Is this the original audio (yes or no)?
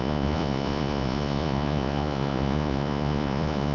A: no